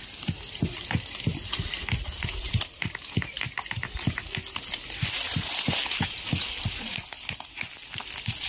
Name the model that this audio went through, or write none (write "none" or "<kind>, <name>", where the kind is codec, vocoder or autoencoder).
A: none